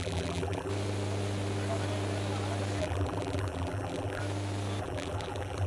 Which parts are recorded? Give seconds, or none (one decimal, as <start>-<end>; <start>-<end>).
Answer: 0.7-2.8; 4.2-4.8